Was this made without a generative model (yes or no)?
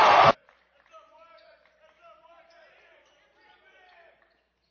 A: no